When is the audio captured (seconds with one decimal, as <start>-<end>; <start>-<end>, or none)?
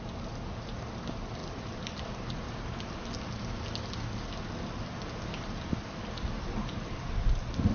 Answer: 0.0-7.7